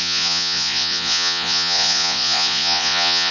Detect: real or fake fake